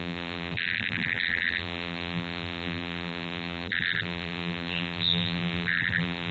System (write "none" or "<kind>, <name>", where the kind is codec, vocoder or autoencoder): vocoder, BigVGAN v2